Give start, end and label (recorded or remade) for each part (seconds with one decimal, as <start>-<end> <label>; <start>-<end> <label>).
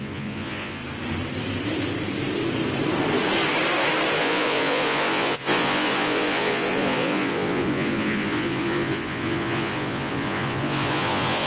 0.0-0.8 remade; 0.8-4.2 recorded; 4.2-11.5 remade